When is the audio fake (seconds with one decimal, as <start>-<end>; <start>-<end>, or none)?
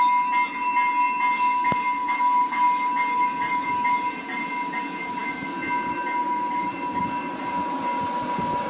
none